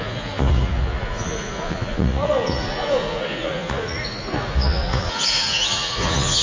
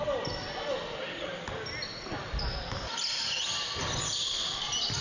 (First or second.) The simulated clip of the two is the first